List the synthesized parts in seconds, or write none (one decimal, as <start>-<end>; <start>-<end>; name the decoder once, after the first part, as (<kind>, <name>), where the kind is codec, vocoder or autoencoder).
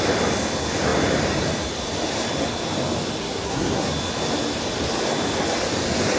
3.2-3.9 (codec, SNAC)